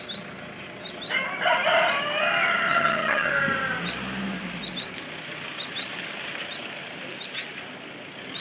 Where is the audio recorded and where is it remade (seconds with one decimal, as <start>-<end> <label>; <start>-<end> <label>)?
0.0-2.7 recorded; 2.7-3.3 remade; 3.3-8.4 recorded